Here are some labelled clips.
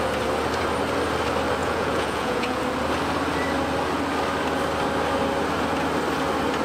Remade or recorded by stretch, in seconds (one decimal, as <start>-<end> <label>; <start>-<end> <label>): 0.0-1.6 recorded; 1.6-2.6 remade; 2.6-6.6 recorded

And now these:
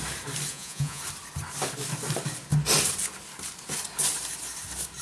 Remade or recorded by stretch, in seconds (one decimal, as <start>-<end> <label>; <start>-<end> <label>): 0.0-0.5 recorded; 0.5-1.0 remade; 1.0-5.0 recorded

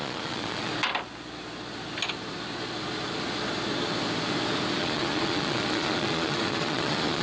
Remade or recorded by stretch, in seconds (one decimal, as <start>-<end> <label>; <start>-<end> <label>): 0.0-0.7 remade; 0.7-4.8 recorded; 4.8-7.2 remade